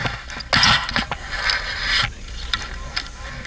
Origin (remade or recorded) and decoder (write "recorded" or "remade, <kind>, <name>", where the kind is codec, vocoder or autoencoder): recorded